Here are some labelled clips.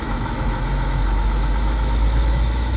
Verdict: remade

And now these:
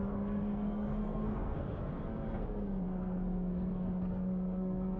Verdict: remade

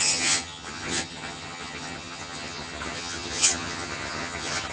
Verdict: remade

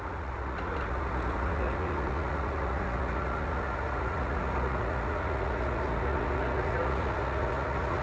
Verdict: remade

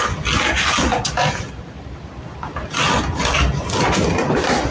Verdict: recorded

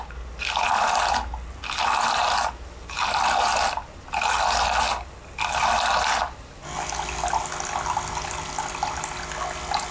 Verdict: recorded